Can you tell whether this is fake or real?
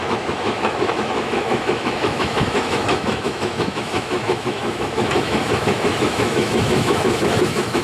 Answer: fake